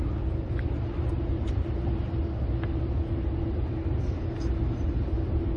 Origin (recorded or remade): recorded